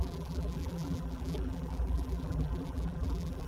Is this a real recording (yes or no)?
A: no